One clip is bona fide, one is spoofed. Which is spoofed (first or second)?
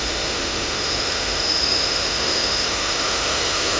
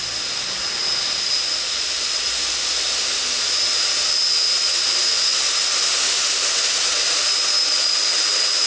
first